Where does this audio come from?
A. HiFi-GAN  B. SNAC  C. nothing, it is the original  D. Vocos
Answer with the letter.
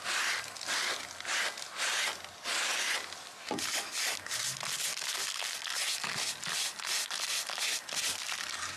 C